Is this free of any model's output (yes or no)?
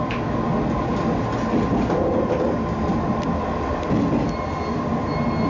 yes